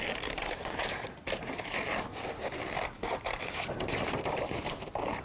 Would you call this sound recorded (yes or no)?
no